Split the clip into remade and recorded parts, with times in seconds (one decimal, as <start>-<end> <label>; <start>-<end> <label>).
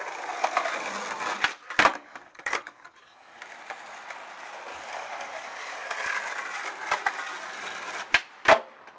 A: 0.0-1.9 recorded; 1.9-3.4 remade; 3.4-4.7 recorded; 4.7-5.9 remade; 5.9-9.0 recorded